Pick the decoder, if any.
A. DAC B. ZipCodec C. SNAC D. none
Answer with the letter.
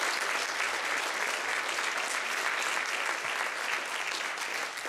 D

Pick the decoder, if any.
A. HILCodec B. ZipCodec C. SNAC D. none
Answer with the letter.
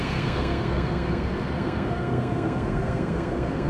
C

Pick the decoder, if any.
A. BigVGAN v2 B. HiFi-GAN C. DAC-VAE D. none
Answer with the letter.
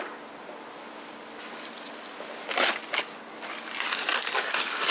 D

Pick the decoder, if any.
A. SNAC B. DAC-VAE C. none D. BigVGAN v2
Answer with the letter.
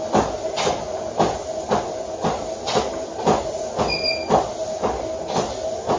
C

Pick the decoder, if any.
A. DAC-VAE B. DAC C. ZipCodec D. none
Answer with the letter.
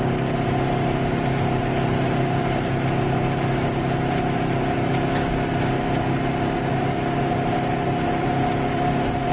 D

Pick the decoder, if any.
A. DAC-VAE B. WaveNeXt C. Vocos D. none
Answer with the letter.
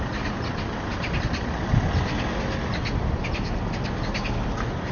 D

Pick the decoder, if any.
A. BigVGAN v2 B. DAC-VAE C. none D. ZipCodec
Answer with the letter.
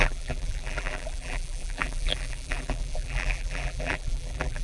A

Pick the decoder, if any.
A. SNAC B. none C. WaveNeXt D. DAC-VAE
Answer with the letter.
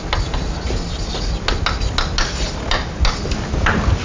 B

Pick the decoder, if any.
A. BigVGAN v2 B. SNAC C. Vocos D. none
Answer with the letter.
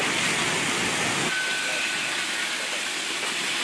D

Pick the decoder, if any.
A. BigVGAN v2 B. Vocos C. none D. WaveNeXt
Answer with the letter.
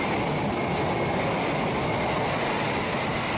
C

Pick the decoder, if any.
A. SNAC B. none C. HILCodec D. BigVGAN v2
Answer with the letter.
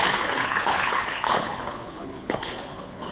C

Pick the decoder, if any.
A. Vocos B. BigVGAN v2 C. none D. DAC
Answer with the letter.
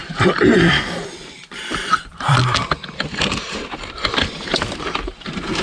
B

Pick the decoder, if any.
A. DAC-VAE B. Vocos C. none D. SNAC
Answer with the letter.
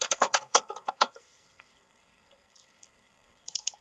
D